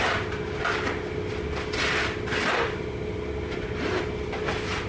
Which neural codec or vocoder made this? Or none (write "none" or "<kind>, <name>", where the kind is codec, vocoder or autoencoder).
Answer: none